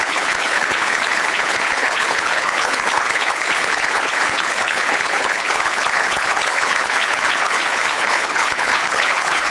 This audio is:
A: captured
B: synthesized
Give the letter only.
B